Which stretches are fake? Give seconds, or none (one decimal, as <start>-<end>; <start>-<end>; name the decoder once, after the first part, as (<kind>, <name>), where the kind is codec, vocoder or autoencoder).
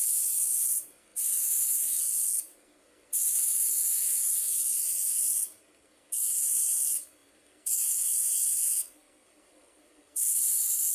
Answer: 0.0-10.9 (codec, SNAC)